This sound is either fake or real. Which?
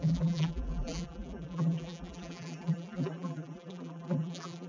fake